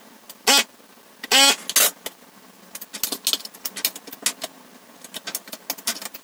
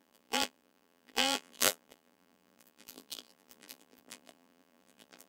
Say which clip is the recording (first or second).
first